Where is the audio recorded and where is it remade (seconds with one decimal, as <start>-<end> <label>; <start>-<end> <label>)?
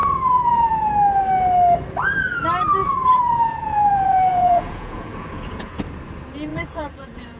0.0-0.8 remade; 0.8-2.8 recorded; 2.8-5.8 remade; 5.8-6.5 recorded; 6.5-7.4 remade